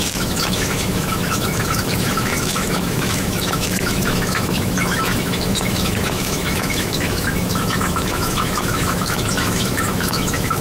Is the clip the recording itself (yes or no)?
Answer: no